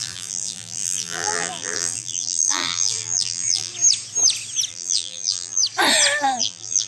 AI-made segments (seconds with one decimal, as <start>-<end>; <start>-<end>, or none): 0.0-3.7; 4.7-5.6; 6.4-6.9